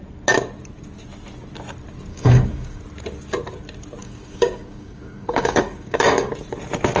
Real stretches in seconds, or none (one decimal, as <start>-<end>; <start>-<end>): 0.0-2.1; 2.8-4.0; 6.3-7.0

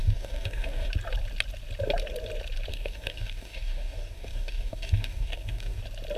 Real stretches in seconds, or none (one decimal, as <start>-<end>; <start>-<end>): 0.9-2.7; 5.8-6.2

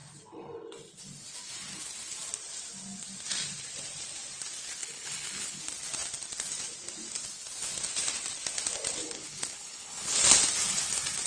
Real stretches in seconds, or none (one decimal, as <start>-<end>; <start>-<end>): 0.0-4.8; 5.6-9.0; 10.2-11.3

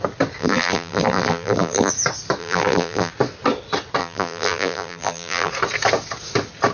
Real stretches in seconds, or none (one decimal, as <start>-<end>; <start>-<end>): 0.0-0.4; 1.9-2.4; 3.1-4.0; 5.5-6.7

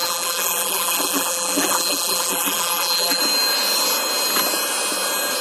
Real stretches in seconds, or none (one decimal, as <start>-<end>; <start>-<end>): 3.2-5.4